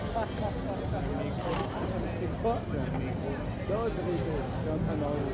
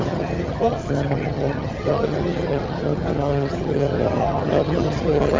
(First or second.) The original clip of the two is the first